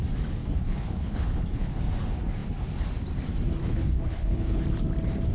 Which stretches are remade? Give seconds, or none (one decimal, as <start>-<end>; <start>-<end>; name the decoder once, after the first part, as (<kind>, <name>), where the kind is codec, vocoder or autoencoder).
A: 0.4-1.8 (codec, HILCodec); 3.6-4.6